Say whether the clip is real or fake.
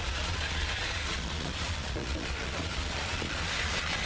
fake